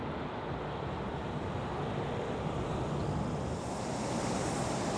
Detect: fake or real real